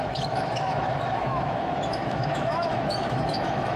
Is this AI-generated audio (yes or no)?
yes